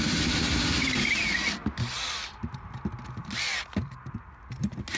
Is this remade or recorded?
recorded